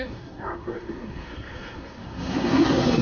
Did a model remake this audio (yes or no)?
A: yes